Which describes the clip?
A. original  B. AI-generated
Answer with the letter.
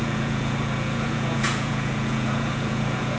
B